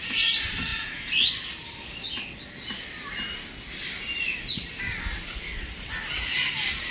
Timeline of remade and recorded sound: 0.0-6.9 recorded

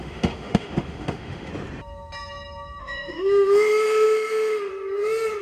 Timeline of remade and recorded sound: 0.0-1.5 remade; 1.5-2.8 recorded; 2.8-4.7 remade; 4.7-5.4 recorded

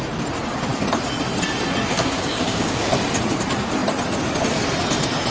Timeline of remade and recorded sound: 0.0-1.9 recorded; 1.9-2.9 remade; 2.9-5.3 recorded

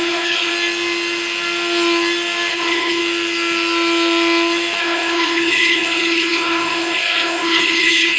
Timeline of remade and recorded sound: 0.0-0.5 remade; 0.5-2.5 recorded; 2.5-3.0 remade; 3.0-4.8 recorded; 4.8-8.2 remade

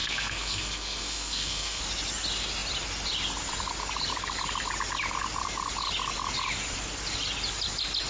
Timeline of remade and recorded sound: 0.0-1.8 remade; 1.8-8.1 recorded

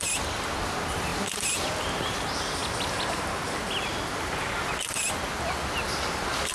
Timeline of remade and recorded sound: 0.0-6.5 recorded

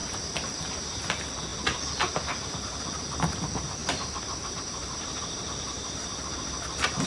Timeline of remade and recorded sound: 0.0-1.1 remade; 1.1-3.8 recorded; 3.8-7.1 remade

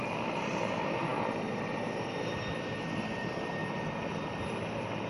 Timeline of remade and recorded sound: 0.0-3.6 remade; 3.6-5.1 recorded